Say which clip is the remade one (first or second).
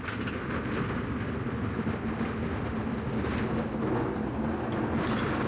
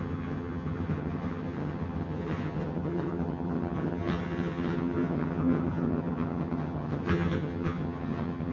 second